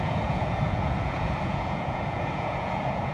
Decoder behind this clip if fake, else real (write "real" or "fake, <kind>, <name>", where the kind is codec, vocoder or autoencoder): fake, vocoder, Vocos